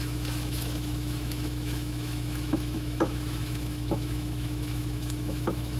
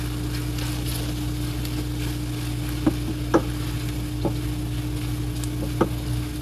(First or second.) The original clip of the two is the second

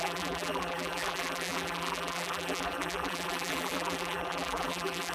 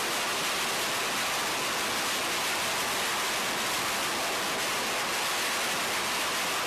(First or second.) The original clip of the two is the second